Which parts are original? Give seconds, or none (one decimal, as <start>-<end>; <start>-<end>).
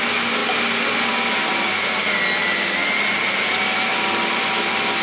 0.0-5.0